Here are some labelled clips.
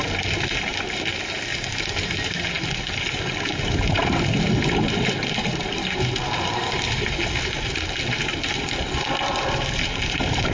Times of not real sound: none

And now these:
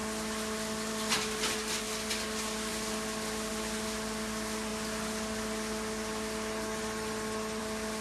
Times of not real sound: none

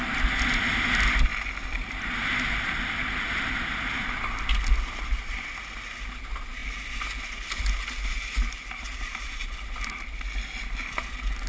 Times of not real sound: 8.9-9.7 (vocoder, BigVGAN v2)

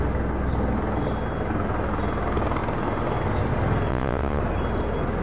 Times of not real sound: 3.9-4.4 (vocoder, Vocos)

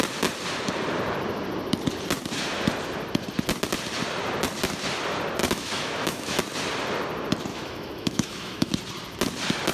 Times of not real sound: 5.4-6.4 (autoencoder, DAC-VAE); 7.5-8.7